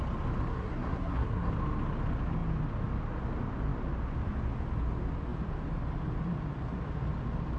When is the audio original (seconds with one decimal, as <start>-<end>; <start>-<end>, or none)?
0.0-0.5; 1.5-7.6